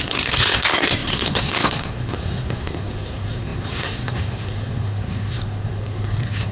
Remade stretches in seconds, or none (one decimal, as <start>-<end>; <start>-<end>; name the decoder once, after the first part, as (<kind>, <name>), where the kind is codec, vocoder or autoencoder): 0.0-6.5 (codec, SNAC)